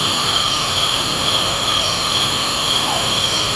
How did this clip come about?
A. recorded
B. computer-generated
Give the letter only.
B